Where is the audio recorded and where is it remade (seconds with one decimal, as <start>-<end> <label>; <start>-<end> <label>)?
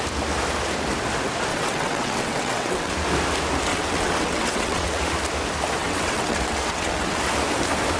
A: 0.0-1.5 recorded; 1.5-2.9 remade; 2.9-3.7 recorded; 3.7-5.0 remade; 5.0-5.8 recorded; 5.8-7.2 remade; 7.2-8.0 recorded